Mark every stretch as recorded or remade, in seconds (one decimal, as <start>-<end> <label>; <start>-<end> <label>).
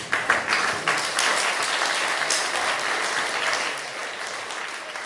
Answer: 0.0-5.1 recorded